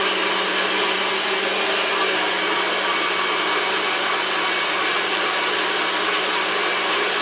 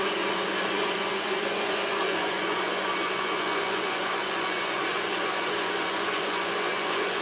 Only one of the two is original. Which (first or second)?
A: first